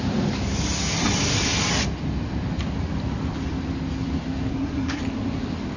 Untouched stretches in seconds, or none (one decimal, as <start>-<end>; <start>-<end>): 0.0-4.5; 5.0-5.8